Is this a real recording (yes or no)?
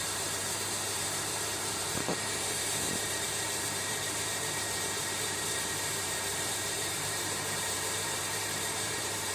no